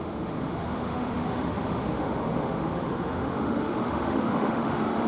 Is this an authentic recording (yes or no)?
no